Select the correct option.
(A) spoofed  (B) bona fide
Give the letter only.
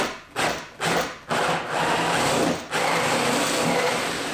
B